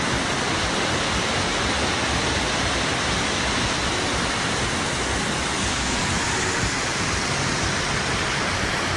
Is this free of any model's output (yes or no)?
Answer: yes